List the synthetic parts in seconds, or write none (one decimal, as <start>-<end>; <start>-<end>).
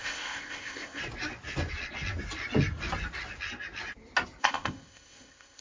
0.0-1.0; 4.4-5.6